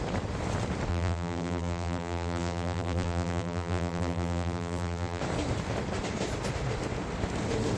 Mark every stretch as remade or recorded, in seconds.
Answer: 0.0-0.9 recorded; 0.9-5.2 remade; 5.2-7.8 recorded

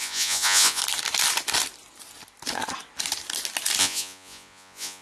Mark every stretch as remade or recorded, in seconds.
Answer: 0.0-0.8 remade; 0.8-3.8 recorded; 3.8-5.0 remade

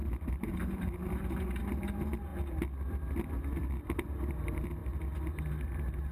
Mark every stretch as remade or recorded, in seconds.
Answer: 0.0-2.3 remade; 2.3-3.8 recorded; 3.8-4.8 remade; 4.8-6.1 recorded

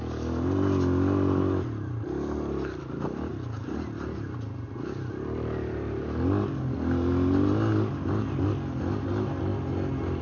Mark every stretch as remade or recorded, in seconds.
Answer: 0.0-10.2 recorded

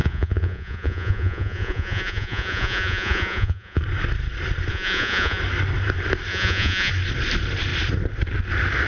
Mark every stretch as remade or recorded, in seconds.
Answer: 0.0-3.8 remade; 3.8-4.7 recorded; 4.7-5.4 remade; 5.4-6.3 recorded; 6.3-6.9 remade; 6.9-8.9 recorded

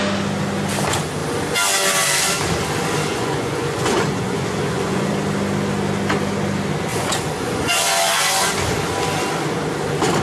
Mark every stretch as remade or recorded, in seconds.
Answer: 0.0-3.1 recorded; 3.1-5.1 remade; 5.1-6.9 recorded; 6.9-8.5 remade; 8.5-10.2 recorded

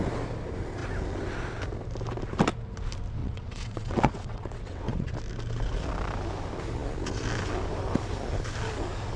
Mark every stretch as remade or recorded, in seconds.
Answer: 0.0-3.2 recorded; 3.2-5.1 remade; 5.1-9.2 recorded

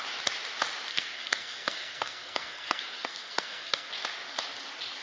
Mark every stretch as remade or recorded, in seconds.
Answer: 0.0-0.9 recorded; 0.9-3.9 remade; 3.9-5.0 recorded